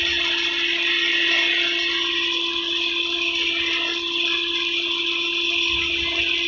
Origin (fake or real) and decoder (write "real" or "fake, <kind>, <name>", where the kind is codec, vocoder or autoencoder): real